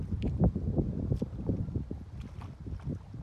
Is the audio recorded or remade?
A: recorded